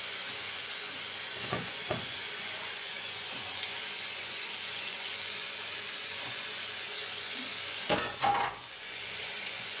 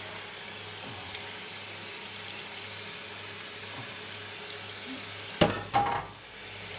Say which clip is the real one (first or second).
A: second